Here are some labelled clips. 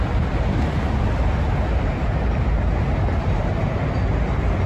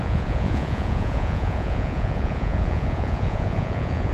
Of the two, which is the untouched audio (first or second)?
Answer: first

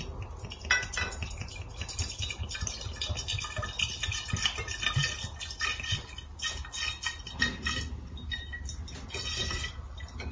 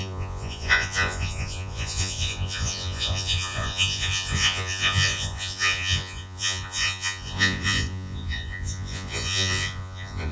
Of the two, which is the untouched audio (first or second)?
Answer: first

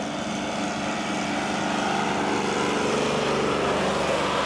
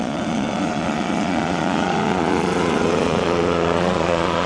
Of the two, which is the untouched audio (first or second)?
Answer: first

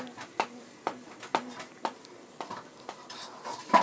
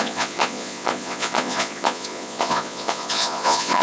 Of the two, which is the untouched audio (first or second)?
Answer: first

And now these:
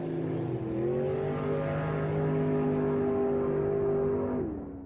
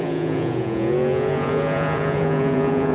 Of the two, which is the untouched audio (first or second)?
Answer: first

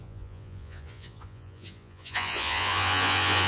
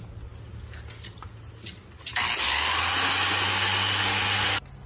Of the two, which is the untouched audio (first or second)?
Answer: second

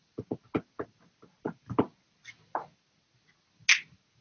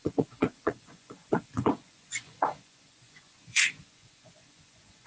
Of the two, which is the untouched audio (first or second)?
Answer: first